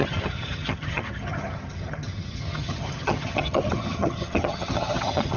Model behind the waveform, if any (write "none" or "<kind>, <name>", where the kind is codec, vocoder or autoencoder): vocoder, HiFi-GAN